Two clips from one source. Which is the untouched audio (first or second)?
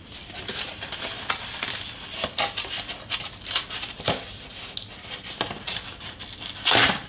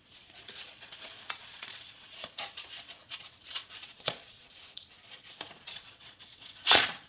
first